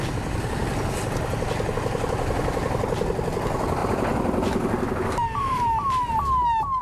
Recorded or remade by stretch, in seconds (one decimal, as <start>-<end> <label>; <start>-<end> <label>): 0.0-3.8 recorded; 3.8-6.1 remade; 6.1-6.8 recorded